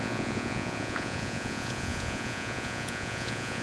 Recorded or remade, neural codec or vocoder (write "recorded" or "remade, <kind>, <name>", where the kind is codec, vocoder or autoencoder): remade, vocoder, Vocos